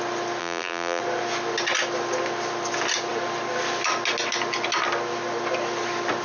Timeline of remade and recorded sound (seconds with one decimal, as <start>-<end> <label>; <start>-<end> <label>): 0.0-0.4 recorded; 0.4-1.0 remade; 1.0-6.2 recorded